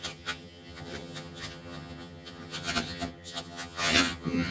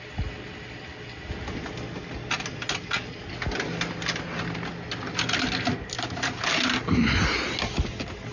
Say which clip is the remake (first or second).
first